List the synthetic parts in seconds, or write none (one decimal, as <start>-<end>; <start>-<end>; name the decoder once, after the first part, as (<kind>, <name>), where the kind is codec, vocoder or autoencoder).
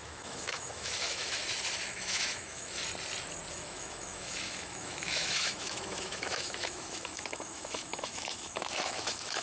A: 0.0-1.4 (autoencoder, DAC-VAE); 1.9-2.8; 3.5-9.4